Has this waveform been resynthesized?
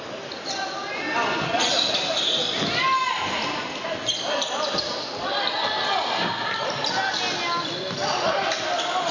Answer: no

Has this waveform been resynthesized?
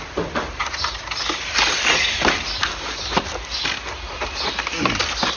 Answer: no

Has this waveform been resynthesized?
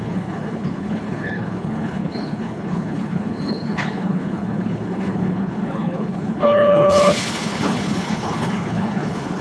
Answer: yes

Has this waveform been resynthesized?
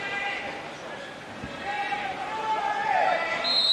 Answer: no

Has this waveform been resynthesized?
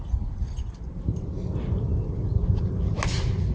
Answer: no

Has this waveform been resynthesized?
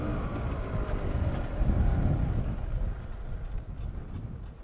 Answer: no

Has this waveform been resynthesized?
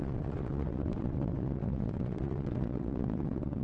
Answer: yes